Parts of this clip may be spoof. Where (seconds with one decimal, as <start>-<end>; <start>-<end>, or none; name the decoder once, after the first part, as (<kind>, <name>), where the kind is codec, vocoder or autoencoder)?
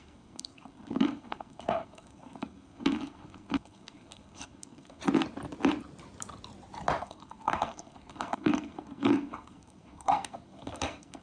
0.0-5.0 (codec, SNAC); 7.0-11.2